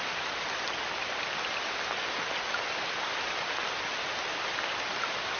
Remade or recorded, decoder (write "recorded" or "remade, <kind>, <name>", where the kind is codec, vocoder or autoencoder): recorded